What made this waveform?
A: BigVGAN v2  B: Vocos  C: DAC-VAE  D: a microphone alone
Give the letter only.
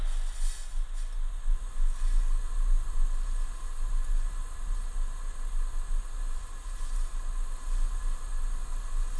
D